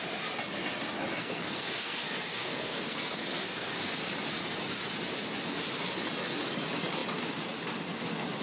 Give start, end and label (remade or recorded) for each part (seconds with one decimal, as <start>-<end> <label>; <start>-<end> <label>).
0.0-1.1 recorded; 1.1-4.1 remade; 4.1-8.4 recorded